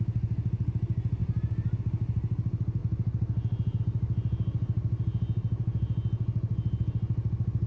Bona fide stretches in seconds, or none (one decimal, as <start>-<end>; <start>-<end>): 0.0-1.2; 1.8-7.7